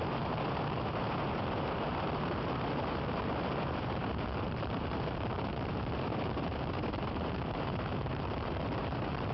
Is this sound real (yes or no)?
no